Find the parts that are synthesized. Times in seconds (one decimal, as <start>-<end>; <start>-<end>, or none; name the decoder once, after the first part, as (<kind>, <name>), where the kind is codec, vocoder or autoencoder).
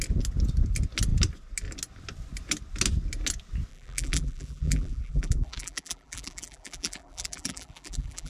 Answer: 3.7-8.3 (vocoder, BigVGAN v2)